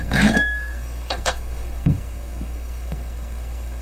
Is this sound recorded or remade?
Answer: remade